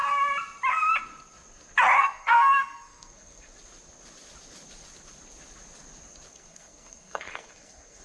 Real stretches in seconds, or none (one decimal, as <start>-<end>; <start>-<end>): 0.0-2.0; 3.5-6.3